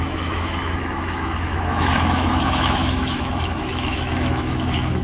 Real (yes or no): no